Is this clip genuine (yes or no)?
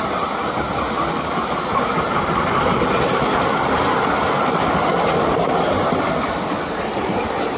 yes